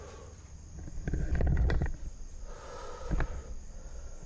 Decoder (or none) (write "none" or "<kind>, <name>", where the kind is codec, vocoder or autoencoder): none